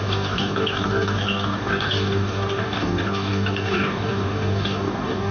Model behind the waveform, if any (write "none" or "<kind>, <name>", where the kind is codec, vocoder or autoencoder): codec, DAC